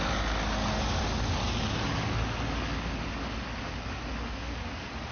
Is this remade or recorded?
recorded